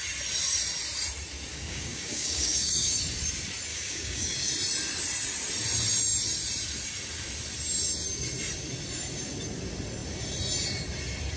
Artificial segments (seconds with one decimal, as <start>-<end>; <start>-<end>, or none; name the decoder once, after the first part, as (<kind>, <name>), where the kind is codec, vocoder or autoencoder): 1.5-3.0 (codec, DAC); 3.7-4.5